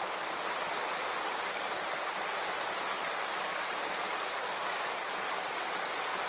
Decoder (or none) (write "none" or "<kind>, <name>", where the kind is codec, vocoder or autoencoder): none